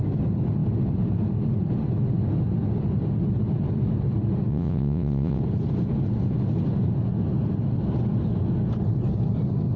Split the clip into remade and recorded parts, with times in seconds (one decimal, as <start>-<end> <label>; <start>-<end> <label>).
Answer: 0.0-4.5 recorded; 4.5-5.4 remade; 5.4-9.8 recorded